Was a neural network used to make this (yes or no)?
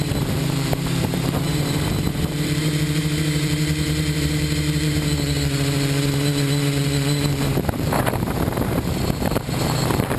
yes